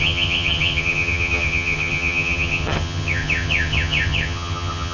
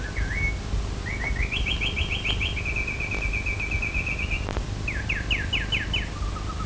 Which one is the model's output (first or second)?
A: first